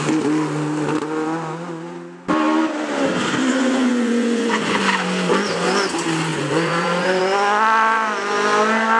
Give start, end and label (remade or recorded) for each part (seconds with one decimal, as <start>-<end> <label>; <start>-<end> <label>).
0.0-3.5 recorded; 3.5-4.8 remade; 4.8-6.3 recorded; 6.3-7.2 remade; 7.2-9.0 recorded